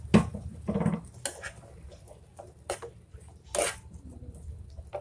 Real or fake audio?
real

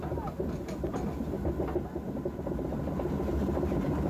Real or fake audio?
real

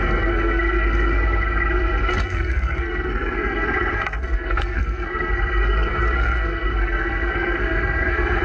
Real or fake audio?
fake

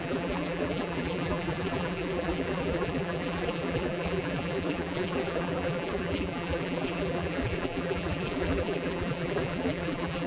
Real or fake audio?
fake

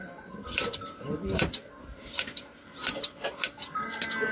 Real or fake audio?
real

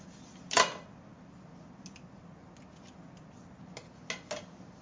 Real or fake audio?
real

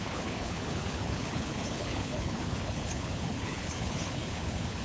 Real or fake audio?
fake